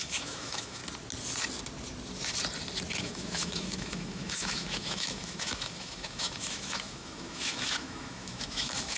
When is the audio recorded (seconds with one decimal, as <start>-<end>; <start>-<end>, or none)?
0.8-3.0